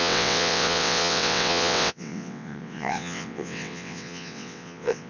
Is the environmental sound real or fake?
fake